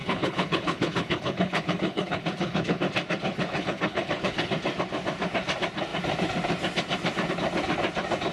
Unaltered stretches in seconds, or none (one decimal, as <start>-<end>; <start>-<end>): 2.8-3.3; 4.5-8.3